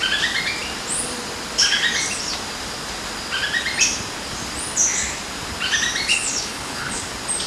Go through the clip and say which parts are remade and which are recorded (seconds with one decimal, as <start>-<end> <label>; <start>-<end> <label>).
0.0-6.1 recorded; 6.1-7.0 remade; 7.0-7.5 recorded